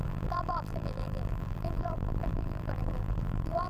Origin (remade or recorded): remade